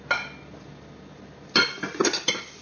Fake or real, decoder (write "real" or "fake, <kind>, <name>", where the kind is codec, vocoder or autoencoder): real